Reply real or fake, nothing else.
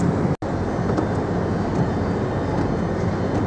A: real